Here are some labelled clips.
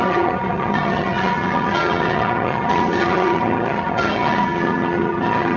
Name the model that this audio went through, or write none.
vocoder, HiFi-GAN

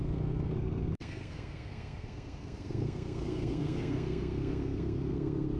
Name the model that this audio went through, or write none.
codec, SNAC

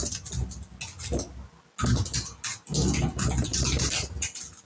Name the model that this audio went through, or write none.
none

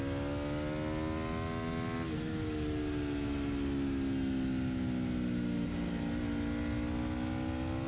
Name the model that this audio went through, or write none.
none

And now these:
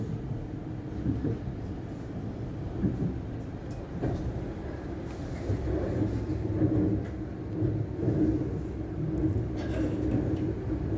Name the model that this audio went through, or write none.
none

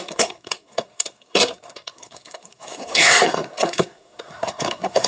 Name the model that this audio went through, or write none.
codec, SNAC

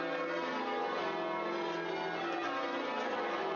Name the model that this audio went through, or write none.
none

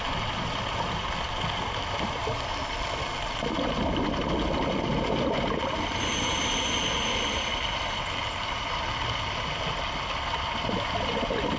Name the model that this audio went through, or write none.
none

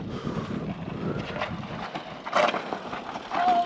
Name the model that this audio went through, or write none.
none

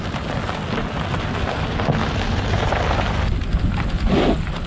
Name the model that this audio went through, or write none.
none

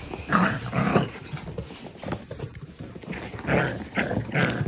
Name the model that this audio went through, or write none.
none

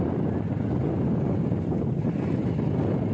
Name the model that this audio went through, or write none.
none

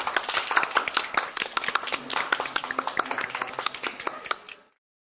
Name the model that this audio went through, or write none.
none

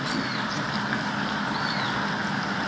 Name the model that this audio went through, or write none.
none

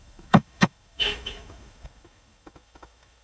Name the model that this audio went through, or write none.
autoencoder, DAC-VAE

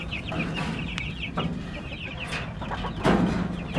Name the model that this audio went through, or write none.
none